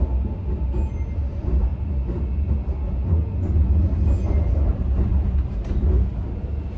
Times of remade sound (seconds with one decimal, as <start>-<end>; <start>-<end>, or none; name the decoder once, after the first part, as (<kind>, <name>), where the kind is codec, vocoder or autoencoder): 4.7-5.7 (vocoder, BigVGAN v2)